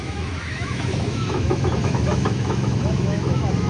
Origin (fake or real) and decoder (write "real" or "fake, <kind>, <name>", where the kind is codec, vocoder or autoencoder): fake, autoencoder, DAC-VAE